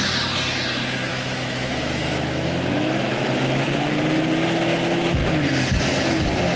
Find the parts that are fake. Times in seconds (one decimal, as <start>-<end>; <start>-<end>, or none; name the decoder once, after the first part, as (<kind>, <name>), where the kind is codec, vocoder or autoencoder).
1.1-4.0 (autoencoder, DAC-VAE)